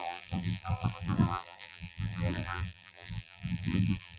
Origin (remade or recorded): remade